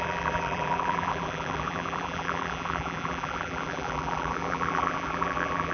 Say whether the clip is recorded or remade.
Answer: remade